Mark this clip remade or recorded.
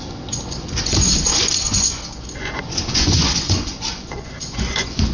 remade